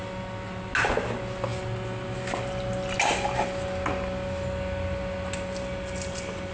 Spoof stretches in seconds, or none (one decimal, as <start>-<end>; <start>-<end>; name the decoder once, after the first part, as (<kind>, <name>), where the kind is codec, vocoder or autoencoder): none